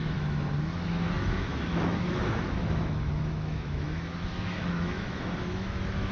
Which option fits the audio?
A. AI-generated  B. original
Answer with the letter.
A